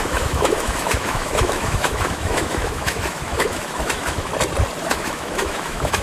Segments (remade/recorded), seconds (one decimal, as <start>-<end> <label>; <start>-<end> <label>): 0.0-4.3 remade; 4.3-4.8 recorded; 4.8-6.0 remade